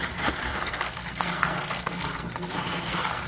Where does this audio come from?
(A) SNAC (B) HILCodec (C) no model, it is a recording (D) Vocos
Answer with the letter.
A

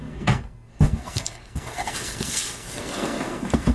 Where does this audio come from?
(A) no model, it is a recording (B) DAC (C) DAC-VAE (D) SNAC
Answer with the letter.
D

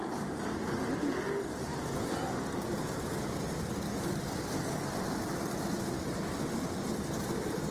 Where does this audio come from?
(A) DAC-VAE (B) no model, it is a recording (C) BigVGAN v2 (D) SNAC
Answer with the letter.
B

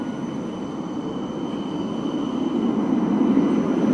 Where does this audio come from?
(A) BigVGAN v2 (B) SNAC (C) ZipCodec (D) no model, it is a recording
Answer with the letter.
D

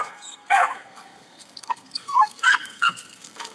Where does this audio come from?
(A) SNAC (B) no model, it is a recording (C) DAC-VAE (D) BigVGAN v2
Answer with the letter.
A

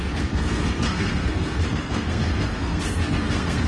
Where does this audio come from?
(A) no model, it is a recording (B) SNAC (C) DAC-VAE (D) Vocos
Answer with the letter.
B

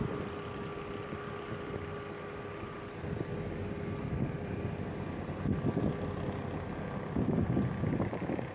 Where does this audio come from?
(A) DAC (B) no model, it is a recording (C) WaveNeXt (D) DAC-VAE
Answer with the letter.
B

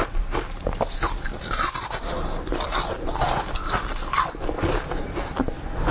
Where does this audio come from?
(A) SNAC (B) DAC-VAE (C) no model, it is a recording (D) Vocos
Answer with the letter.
C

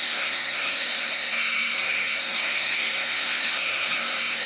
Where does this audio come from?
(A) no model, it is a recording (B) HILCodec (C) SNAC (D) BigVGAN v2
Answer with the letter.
C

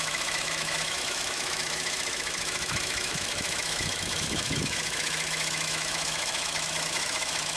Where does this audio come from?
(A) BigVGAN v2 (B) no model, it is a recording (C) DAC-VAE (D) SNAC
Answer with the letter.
C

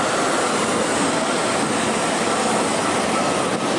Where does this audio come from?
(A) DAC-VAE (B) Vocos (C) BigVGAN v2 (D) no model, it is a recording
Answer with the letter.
C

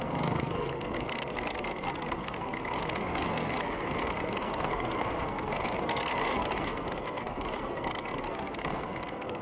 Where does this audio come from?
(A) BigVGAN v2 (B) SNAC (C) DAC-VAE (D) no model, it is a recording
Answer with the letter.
B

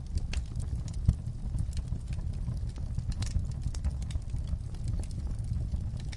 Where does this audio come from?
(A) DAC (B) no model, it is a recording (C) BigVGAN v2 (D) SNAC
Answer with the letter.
B